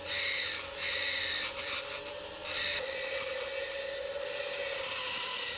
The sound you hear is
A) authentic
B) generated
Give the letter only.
A